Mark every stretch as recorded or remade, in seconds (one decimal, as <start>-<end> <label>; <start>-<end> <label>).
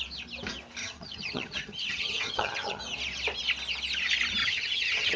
0.0-0.8 recorded; 0.8-2.8 remade; 2.8-4.4 recorded; 4.4-5.2 remade